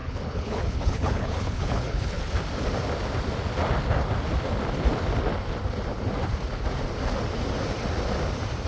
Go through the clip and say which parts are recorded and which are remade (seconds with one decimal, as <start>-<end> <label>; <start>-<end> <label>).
0.0-2.2 remade; 2.2-8.7 recorded